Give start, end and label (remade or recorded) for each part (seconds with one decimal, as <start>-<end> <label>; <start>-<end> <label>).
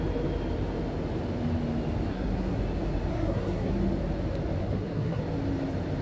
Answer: 0.0-2.1 recorded; 2.1-2.6 remade; 2.6-3.1 recorded; 3.1-3.7 remade; 3.7-4.6 recorded; 4.6-5.2 remade; 5.2-6.0 recorded